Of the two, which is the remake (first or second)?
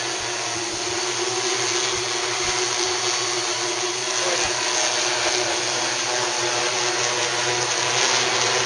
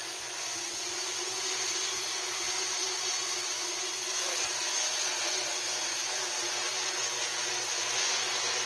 second